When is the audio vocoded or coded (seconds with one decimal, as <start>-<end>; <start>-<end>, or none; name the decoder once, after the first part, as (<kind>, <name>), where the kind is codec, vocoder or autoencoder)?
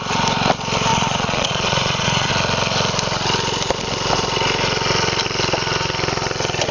0.9-2.3 (vocoder, Vocos)